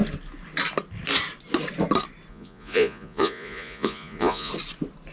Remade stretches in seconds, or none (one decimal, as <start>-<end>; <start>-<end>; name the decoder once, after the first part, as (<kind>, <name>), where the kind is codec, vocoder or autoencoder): 2.3-4.5 (vocoder, Vocos)